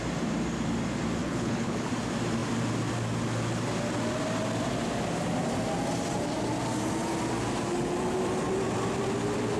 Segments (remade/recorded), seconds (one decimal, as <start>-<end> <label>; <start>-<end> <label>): 0.0-1.2 recorded; 1.2-1.9 remade; 1.9-9.6 recorded